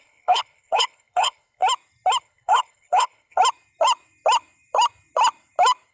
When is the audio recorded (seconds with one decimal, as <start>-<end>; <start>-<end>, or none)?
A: 1.6-2.2; 3.4-5.9